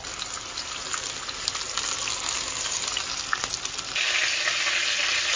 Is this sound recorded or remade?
recorded